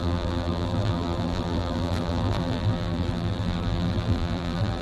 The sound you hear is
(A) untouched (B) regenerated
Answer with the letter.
B